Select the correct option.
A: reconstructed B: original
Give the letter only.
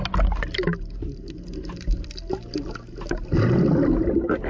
B